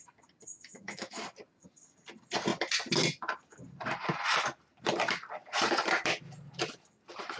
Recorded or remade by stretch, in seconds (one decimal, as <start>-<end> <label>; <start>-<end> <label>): 0.0-0.5 recorded; 0.5-1.2 remade; 1.2-7.4 recorded